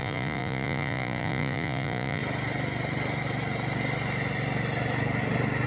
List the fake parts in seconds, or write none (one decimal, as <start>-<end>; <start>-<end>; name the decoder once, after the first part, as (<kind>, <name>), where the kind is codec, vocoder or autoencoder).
0.0-2.2 (vocoder, Vocos)